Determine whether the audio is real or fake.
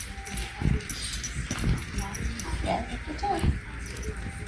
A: real